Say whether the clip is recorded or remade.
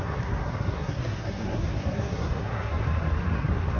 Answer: remade